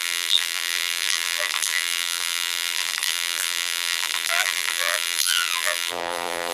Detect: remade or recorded remade